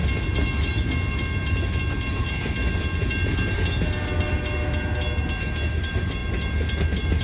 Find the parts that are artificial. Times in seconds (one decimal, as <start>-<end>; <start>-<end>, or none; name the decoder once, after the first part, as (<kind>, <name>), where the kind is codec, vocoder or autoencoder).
none